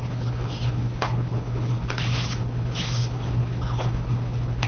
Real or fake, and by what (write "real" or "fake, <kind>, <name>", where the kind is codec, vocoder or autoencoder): fake, codec, HILCodec